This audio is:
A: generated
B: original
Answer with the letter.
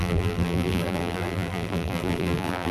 A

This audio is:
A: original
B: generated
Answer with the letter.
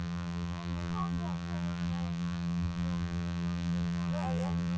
B